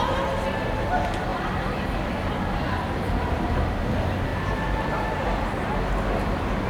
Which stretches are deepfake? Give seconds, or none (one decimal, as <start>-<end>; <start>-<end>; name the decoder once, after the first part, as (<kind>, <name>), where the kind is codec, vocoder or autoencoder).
1.3-3.8 (vocoder, BigVGAN v2)